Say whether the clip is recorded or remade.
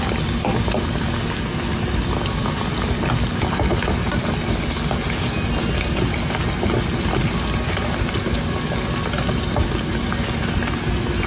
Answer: recorded